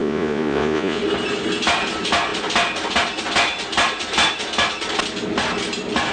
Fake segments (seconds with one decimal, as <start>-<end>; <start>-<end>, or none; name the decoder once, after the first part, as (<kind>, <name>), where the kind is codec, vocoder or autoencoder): 0.0-1.0 (vocoder, Vocos)